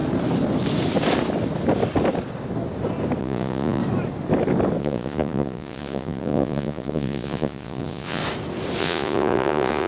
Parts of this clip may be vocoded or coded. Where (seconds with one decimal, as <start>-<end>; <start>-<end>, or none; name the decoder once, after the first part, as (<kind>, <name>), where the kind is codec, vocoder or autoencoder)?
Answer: 3.2-3.8 (vocoder, Vocos); 4.8-8.2; 8.8-9.9